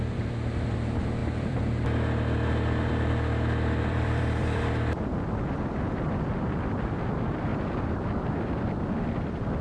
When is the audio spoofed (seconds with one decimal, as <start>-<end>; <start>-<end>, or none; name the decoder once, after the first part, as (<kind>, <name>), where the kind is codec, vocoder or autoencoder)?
1.2-6.1 (vocoder, BigVGAN v2); 7.5-8.0